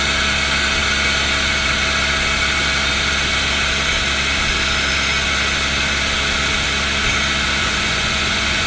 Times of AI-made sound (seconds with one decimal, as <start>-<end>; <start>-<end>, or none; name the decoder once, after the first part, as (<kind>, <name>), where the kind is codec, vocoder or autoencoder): 7.6-8.7 (vocoder, Vocos)